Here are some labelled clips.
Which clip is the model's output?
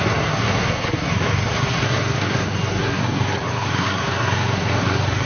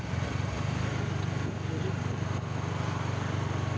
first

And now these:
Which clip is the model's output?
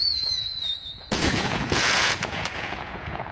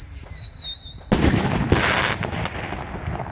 first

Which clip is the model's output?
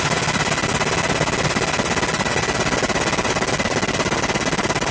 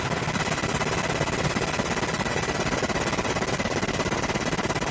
second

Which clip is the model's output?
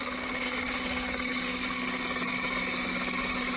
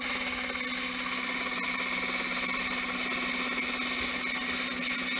first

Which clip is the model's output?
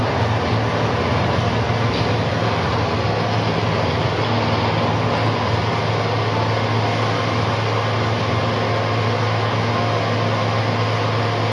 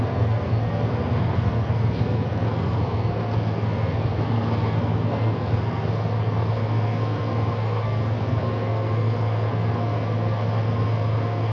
second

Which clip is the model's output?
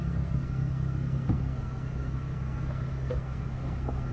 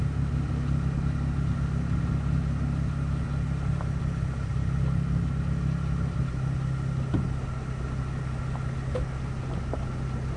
first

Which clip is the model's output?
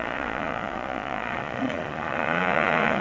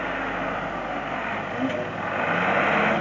first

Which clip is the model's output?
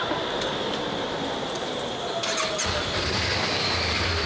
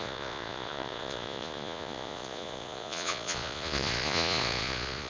second